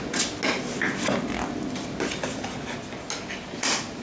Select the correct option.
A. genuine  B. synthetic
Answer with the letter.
A